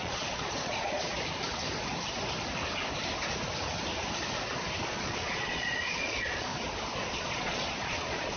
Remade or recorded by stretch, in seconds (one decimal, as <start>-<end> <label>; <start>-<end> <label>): 0.0-1.1 remade; 1.1-4.8 recorded; 4.8-6.5 remade; 6.5-7.1 recorded; 7.1-8.4 remade

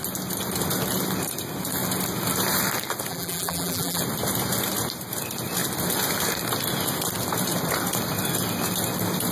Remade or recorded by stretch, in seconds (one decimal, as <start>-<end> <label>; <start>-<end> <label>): 0.0-3.1 recorded; 3.1-4.0 remade; 4.0-9.3 recorded